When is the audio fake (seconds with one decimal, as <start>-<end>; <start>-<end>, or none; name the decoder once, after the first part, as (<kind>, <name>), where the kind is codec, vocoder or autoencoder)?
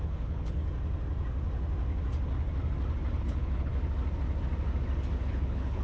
0.0-0.6 (codec, HILCodec); 3.2-3.7; 5.2-5.8